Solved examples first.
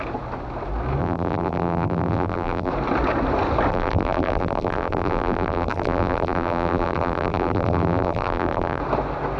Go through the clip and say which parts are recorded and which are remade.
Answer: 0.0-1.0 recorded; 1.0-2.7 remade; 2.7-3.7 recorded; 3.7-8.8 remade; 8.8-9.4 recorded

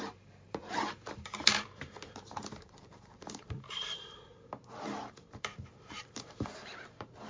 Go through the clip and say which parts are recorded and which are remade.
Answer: 0.0-4.3 remade; 4.3-5.0 recorded; 5.0-7.3 remade